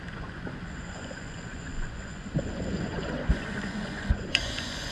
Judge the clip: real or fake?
fake